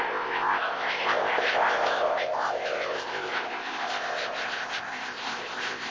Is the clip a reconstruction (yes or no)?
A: yes